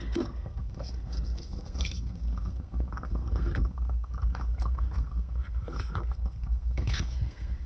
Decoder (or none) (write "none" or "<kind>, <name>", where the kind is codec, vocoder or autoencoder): codec, SNAC